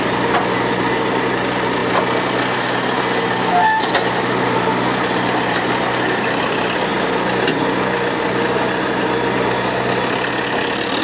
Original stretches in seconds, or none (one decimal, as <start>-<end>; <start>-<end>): 0.0-11.0